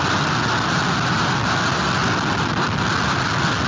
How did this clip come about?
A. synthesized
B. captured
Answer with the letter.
B